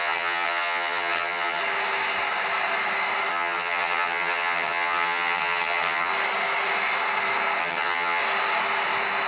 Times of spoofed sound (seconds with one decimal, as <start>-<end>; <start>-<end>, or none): 0.0-1.6; 3.3-6.1; 7.6-8.2